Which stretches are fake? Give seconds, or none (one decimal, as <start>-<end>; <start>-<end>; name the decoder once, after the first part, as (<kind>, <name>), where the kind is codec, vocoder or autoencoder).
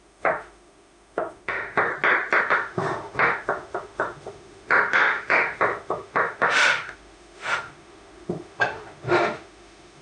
0.0-1.9 (autoencoder, DAC-VAE); 2.4-10.0